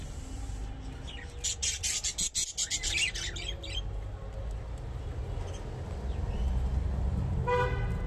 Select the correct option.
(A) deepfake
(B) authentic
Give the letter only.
B